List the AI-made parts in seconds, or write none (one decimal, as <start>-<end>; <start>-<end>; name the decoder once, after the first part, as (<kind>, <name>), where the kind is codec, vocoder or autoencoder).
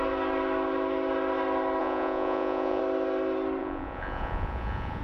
1.8-2.8 (vocoder, Vocos); 3.6-5.0